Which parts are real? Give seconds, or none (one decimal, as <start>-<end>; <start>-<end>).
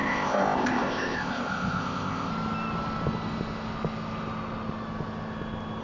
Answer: 2.3-5.8